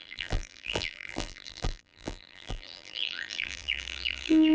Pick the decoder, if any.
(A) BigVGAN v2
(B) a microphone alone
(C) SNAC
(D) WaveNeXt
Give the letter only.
A